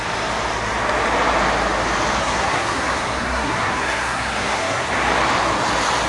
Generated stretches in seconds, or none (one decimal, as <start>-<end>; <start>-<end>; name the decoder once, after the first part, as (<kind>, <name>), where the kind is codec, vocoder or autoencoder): 2.2-4.9 (codec, SNAC)